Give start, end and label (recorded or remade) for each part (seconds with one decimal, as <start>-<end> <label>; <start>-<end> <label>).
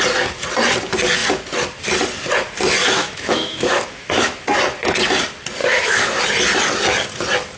0.0-2.8 recorded; 2.8-4.4 remade; 4.4-5.6 recorded; 5.6-6.2 remade; 6.2-7.6 recorded